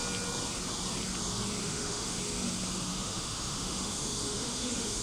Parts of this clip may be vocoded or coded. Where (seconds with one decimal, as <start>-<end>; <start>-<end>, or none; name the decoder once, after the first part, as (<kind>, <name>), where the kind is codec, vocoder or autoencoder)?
1.6-2.2 (autoencoder, DAC-VAE); 2.9-5.0